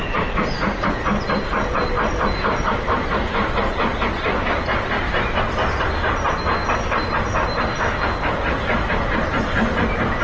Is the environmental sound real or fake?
real